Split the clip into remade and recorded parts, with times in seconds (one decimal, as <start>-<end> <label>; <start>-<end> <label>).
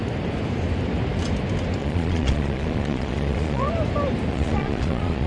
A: 0.0-1.8 recorded; 1.8-3.7 remade; 3.7-4.3 recorded; 4.3-5.3 remade